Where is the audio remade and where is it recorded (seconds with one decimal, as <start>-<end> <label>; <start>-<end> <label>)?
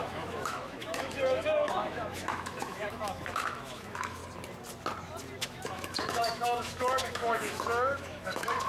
0.0-4.2 remade; 4.2-5.4 recorded; 5.4-8.7 remade